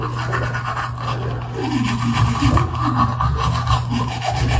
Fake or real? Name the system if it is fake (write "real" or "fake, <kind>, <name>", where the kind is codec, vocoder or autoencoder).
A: real